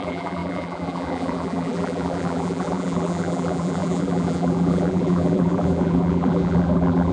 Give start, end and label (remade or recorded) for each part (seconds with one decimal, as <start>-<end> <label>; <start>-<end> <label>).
0.0-7.1 remade